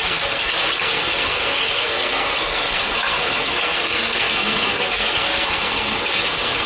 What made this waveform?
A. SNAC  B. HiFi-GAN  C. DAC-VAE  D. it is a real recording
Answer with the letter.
A